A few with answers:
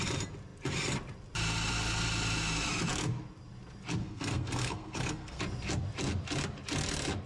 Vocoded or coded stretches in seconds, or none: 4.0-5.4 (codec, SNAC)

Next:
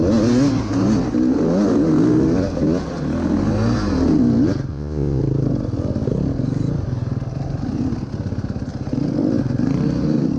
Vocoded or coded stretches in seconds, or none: 4.7-5.2 (vocoder, Vocos)